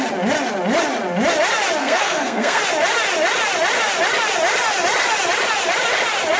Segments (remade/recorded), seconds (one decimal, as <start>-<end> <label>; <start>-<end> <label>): 0.0-1.8 recorded; 1.8-2.6 remade; 2.6-6.4 recorded